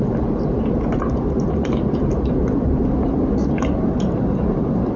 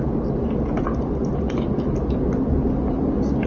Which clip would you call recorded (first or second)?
second